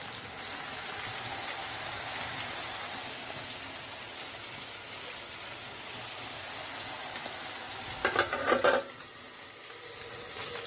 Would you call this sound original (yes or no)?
yes